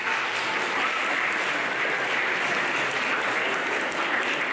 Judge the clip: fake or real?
real